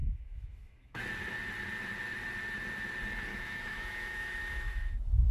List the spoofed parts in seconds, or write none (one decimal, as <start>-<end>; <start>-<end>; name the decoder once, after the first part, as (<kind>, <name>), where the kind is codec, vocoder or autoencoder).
0.0-1.0 (autoencoder, DAC-VAE); 3.3-5.3

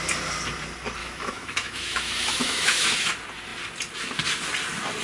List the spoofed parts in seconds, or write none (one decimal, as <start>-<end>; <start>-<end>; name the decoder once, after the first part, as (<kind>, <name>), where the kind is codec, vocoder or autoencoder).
1.0-3.1 (autoencoder, DAC-VAE)

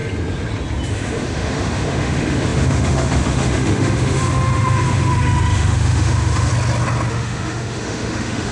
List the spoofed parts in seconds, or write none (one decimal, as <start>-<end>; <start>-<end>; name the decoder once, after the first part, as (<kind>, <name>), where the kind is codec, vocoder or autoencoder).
0.9-6.5 (autoencoder, DAC-VAE); 7.1-8.5

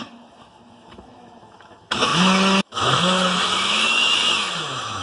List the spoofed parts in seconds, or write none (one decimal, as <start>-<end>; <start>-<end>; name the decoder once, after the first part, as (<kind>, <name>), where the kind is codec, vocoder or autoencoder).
0.0-5.0 (autoencoder, DAC-VAE)